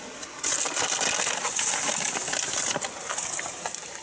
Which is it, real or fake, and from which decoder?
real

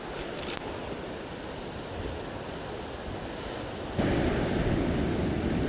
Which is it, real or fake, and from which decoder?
real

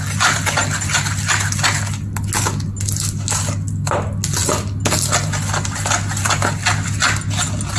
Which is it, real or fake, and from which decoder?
real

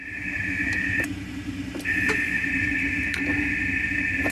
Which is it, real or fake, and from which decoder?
real